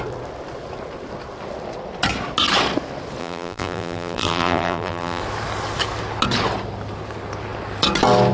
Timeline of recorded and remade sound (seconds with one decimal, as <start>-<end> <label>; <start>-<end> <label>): 0.0-3.2 recorded; 3.2-5.2 remade; 5.2-8.3 recorded